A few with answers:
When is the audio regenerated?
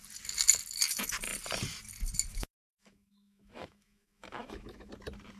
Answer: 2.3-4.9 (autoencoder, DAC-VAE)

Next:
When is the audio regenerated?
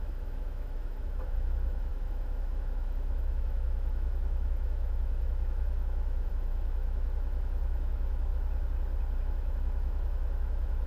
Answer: 0.0-8.3 (autoencoder, DAC-VAE); 9.2-10.9